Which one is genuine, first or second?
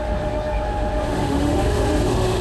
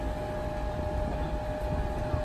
second